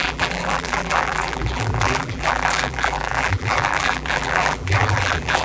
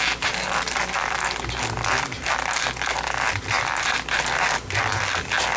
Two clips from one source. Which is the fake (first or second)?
first